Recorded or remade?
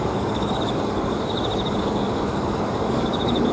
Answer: remade